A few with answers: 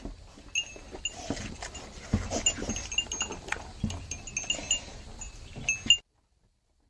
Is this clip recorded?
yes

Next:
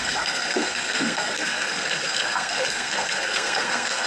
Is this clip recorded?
no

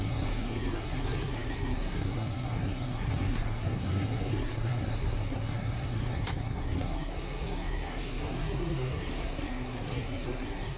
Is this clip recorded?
no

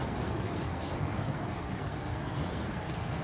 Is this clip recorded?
no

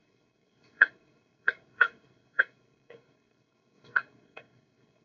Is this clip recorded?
no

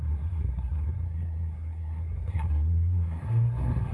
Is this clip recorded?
no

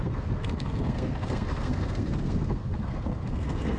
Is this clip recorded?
no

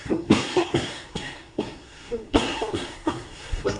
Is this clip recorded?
no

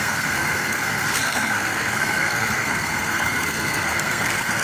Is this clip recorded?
no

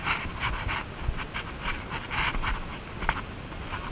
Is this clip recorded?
yes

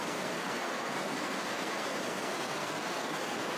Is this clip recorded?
no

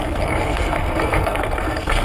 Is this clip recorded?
no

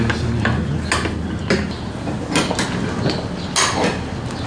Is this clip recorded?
yes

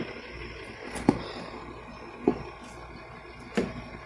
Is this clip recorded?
yes